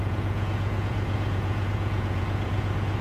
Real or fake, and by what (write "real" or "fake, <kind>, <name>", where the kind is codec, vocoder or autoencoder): fake, vocoder, Vocos